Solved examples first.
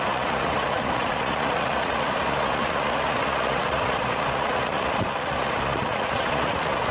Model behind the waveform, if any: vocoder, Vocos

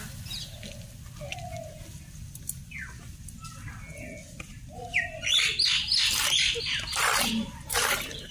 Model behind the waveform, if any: none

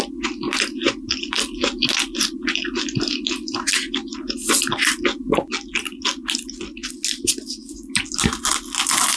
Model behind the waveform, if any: none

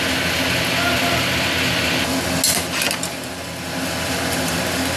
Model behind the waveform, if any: none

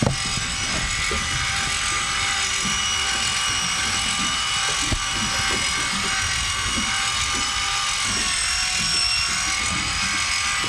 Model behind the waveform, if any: none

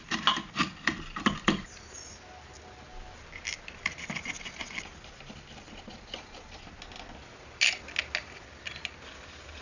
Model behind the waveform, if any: none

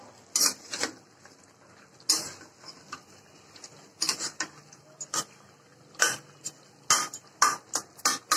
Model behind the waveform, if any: none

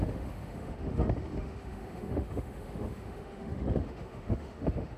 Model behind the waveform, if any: autoencoder, DAC-VAE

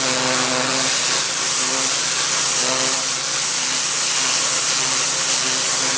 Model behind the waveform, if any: none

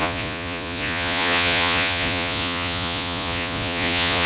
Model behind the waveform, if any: vocoder, Vocos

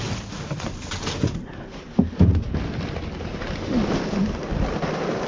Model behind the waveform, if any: none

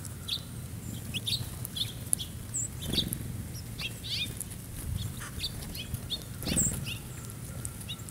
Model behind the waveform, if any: none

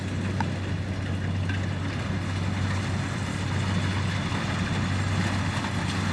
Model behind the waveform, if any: none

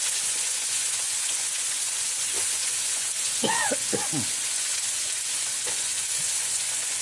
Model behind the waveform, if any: vocoder, Vocos